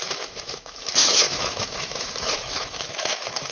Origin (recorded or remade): remade